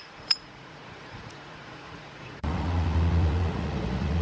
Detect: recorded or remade remade